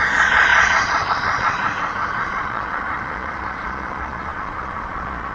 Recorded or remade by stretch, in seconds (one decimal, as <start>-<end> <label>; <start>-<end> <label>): 0.0-1.6 remade; 1.6-2.2 recorded; 2.2-5.3 remade